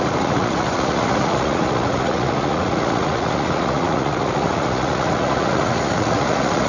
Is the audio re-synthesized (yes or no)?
yes